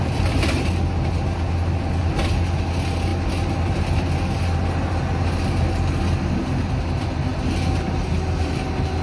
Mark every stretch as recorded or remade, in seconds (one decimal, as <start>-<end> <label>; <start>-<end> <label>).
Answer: 0.0-9.0 recorded